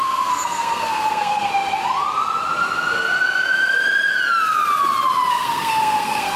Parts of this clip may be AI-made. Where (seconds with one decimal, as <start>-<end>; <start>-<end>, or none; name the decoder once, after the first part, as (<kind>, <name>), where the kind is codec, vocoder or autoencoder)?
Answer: 0.0-1.5 (codec, SNAC); 5.3-6.4

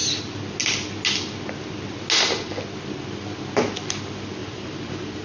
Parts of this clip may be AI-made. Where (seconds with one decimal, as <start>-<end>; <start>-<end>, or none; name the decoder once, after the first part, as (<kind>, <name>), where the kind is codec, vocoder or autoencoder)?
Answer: 4.4-5.2 (vocoder, BigVGAN v2)

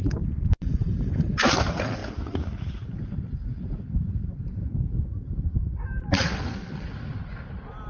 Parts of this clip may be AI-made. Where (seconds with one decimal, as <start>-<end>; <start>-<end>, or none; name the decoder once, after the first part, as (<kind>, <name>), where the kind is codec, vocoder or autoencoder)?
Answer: none

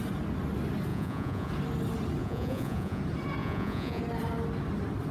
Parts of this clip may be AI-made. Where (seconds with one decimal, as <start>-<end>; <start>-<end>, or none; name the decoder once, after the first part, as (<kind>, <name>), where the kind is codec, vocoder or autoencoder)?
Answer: 0.9-1.5 (vocoder, Vocos); 2.2-3.0; 3.4-4.0

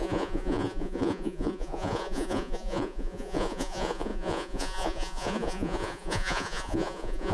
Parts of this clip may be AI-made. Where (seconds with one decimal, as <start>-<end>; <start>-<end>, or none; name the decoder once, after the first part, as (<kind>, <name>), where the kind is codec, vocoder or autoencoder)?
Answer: 0.0-7.3 (vocoder, Vocos)